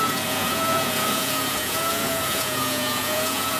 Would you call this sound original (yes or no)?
no